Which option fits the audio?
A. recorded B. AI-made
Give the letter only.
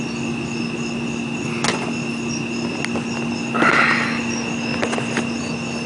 A